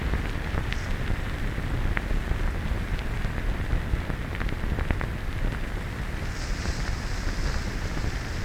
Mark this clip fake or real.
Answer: real